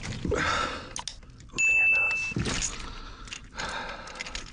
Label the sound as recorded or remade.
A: recorded